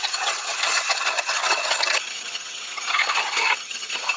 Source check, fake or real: fake